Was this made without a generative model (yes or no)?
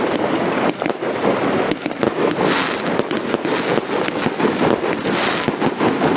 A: yes